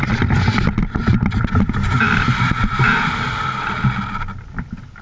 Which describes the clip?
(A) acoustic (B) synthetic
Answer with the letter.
A